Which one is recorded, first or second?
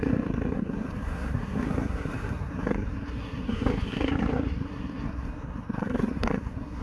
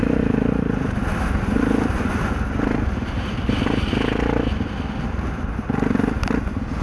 second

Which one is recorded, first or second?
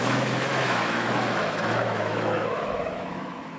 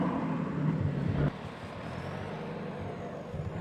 second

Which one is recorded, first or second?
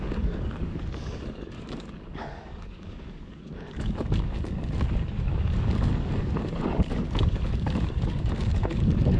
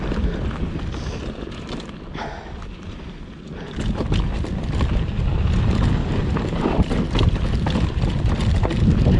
second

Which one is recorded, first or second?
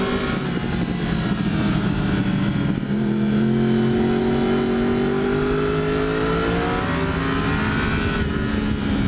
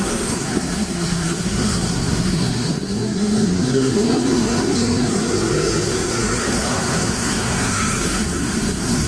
first